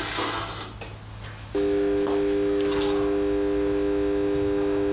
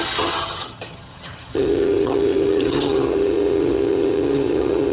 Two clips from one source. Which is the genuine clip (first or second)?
first